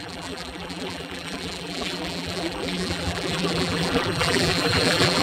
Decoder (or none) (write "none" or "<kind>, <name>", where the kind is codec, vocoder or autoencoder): vocoder, BigVGAN v2